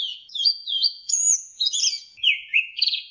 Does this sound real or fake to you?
fake